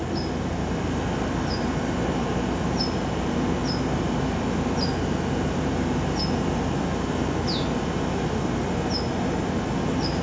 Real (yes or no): yes